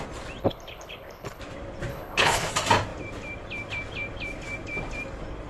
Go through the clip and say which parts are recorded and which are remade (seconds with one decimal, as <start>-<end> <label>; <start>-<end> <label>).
0.0-0.4 recorded; 0.4-1.4 remade; 1.4-1.9 recorded; 1.9-2.5 remade; 2.5-5.5 recorded